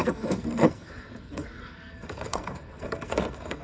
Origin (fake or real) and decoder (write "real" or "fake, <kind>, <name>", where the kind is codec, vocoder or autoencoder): fake, codec, SNAC